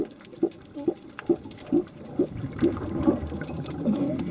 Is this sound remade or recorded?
recorded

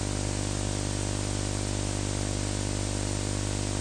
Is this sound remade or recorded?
recorded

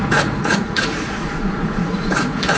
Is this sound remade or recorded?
remade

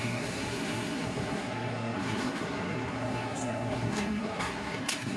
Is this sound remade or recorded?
remade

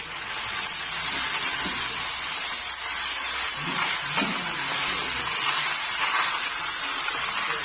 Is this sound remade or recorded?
recorded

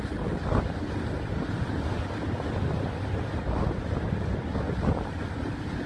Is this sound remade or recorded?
recorded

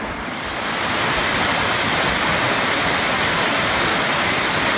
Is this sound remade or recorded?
recorded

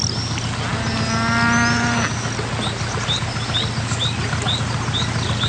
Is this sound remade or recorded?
recorded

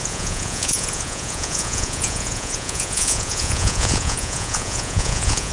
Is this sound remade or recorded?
remade